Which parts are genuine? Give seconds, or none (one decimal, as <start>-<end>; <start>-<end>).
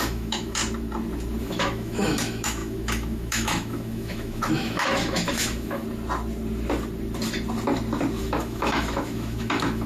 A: 0.6-1.4; 5.8-8.2